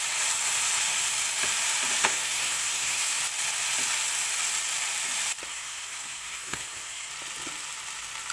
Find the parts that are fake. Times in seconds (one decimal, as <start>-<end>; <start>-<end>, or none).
2.0-3.2; 5.5-7.1